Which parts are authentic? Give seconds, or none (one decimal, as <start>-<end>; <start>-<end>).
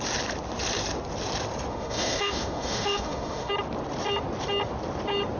0.0-1.7; 3.5-5.4